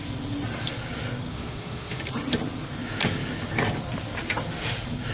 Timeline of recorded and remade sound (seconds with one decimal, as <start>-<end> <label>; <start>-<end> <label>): 0.0-1.3 recorded; 1.3-2.0 remade; 2.0-5.1 recorded